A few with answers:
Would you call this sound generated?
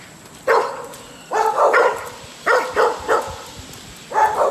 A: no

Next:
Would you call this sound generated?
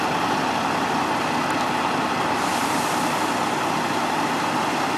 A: no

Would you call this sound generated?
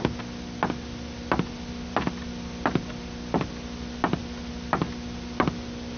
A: no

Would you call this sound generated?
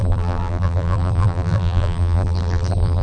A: yes